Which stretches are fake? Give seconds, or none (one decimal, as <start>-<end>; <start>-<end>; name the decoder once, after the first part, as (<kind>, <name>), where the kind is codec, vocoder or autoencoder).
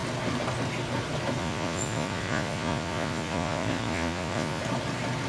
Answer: 1.4-4.6 (vocoder, Vocos)